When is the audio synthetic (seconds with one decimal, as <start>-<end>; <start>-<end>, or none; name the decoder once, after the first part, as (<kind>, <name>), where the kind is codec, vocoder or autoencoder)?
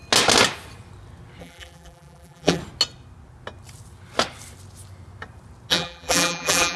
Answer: 1.4-2.6 (vocoder, BigVGAN v2); 5.7-6.8